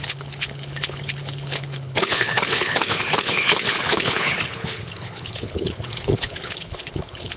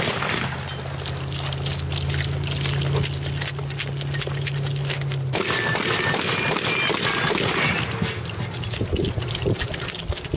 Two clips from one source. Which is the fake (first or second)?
first